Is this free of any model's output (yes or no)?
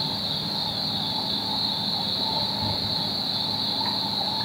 no